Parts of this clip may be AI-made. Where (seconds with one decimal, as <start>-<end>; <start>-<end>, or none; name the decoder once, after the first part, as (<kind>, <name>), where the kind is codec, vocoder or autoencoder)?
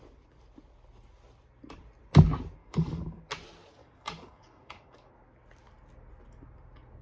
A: 2.6-3.2 (codec, DAC); 3.8-5.1